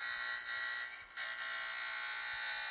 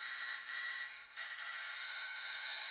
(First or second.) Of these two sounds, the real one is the first